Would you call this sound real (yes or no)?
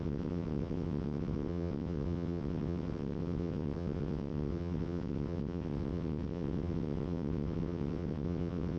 no